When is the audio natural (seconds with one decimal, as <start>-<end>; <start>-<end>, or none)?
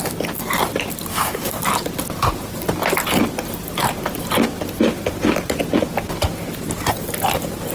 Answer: 0.0-1.1; 1.6-7.7